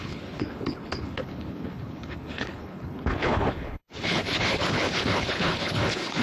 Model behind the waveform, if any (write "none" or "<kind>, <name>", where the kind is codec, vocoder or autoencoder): codec, HILCodec